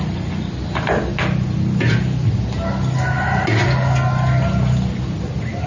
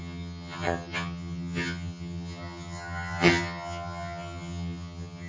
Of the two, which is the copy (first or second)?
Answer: second